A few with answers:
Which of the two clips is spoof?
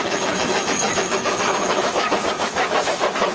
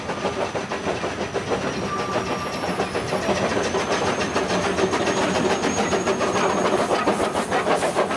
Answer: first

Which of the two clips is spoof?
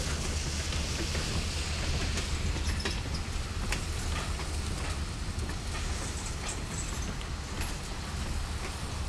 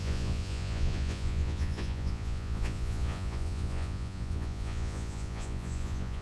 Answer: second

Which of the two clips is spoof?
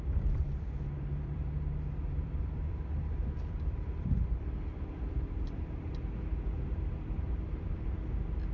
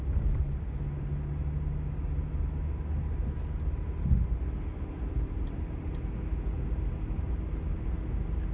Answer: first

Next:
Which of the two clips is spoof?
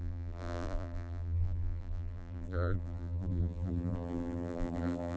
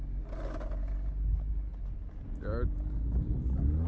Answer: first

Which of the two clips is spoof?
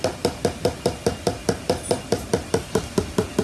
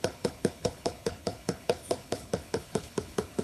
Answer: second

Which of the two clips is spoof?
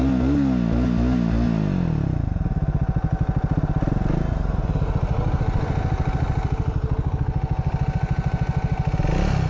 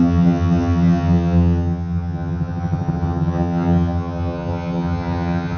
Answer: second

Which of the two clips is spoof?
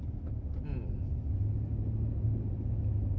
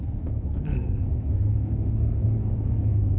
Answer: second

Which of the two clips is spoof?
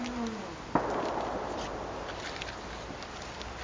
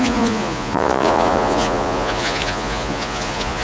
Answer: second